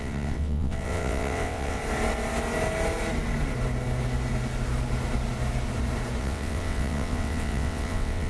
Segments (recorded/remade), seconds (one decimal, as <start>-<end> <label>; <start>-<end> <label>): 0.0-1.8 remade; 1.8-6.2 recorded; 6.2-8.3 remade